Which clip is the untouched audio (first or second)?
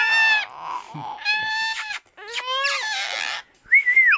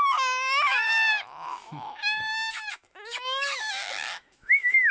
first